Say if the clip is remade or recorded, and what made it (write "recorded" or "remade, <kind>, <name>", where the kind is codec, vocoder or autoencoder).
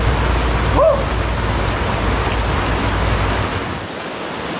recorded